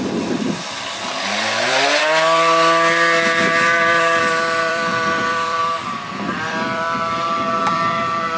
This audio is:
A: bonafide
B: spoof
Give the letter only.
B